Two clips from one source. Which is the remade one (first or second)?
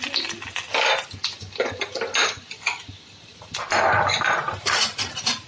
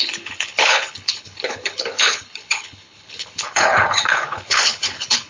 second